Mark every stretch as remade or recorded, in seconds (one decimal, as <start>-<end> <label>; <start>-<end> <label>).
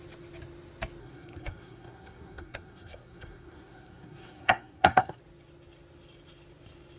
0.0-1.0 recorded; 1.0-5.2 remade; 5.2-7.0 recorded